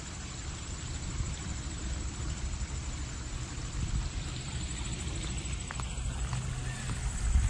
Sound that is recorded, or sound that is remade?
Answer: recorded